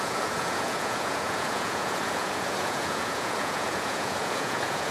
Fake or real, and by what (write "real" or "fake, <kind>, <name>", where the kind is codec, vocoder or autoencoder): fake, vocoder, Vocos